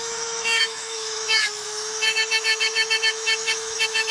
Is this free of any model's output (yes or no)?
no